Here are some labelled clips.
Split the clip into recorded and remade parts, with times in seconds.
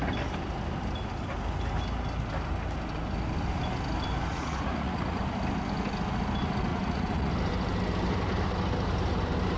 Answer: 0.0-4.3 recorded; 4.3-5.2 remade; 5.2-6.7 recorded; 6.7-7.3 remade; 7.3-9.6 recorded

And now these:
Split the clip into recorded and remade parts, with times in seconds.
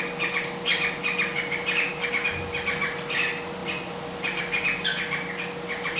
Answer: 0.0-0.7 recorded; 0.7-1.9 remade; 1.9-6.0 recorded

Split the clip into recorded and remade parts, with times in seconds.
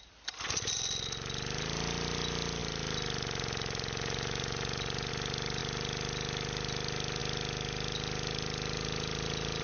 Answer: 0.0-9.6 recorded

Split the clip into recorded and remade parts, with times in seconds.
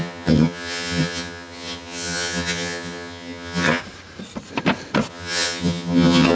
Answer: 0.0-3.8 remade; 3.8-5.1 recorded; 5.1-6.3 remade